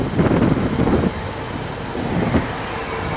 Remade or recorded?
recorded